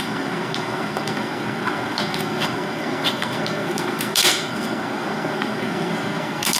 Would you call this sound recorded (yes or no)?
no